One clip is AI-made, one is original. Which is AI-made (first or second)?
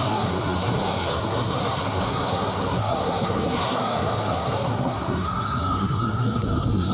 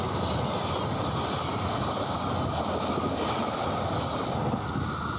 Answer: first